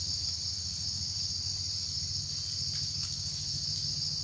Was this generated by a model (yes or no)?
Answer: no